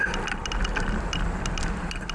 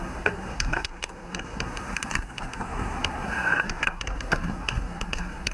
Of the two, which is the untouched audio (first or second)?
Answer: first